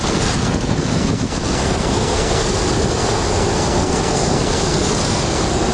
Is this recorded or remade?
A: remade